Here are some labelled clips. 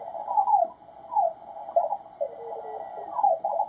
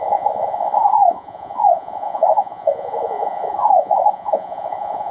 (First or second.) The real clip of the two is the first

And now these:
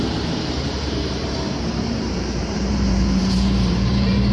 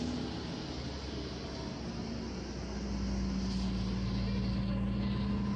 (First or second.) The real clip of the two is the second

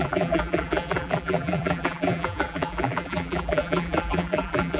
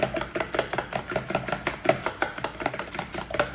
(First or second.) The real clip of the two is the second